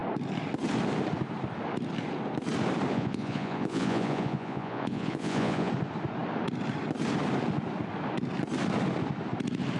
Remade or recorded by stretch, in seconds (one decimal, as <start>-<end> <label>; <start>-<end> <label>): 0.0-2.9 recorded; 2.9-5.7 remade; 5.7-9.8 recorded